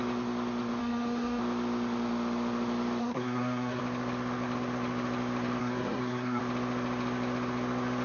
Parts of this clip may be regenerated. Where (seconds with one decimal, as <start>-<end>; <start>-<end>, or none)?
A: 0.8-1.4; 3.0-3.8; 5.6-6.4